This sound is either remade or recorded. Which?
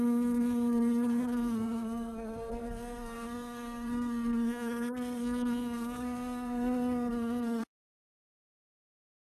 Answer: remade